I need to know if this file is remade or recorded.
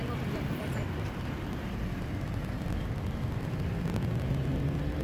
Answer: recorded